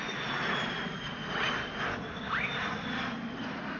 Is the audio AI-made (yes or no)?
no